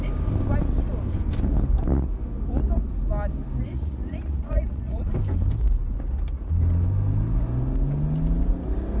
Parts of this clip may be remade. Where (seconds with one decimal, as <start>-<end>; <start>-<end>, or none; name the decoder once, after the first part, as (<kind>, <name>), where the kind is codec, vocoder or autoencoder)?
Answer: 3.6-5.1 (vocoder, Vocos)